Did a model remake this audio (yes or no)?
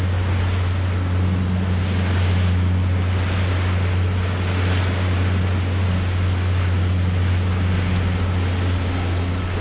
no